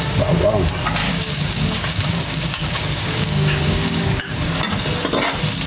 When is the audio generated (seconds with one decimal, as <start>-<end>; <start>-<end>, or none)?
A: 1.0-4.2